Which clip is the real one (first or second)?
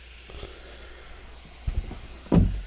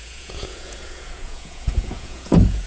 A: first